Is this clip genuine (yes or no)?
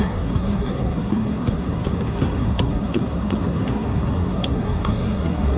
no